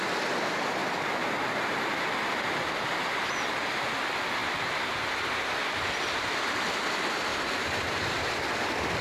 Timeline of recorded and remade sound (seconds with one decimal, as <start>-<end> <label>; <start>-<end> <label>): 0.0-0.8 recorded; 0.8-2.6 remade; 2.6-7.3 recorded; 7.3-8.3 remade; 8.3-9.0 recorded